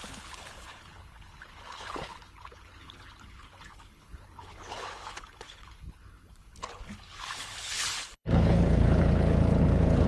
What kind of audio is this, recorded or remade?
remade